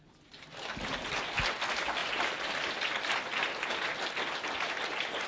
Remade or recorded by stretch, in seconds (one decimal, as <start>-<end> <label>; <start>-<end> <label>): 0.0-5.3 recorded